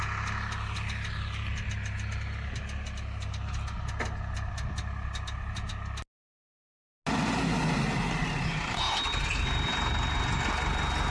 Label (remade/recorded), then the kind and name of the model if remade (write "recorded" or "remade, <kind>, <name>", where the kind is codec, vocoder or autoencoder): recorded